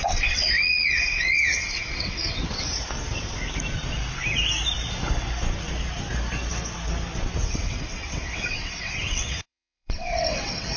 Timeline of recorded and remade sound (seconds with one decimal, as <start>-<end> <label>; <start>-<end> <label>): 0.0-2.4 remade; 2.4-7.5 recorded; 7.5-10.8 remade